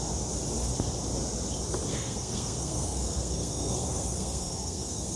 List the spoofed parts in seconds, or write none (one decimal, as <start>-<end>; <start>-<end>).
1.9-5.2